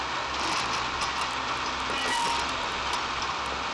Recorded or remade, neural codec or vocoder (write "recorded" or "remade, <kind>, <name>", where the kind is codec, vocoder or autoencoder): recorded